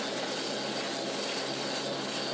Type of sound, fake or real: real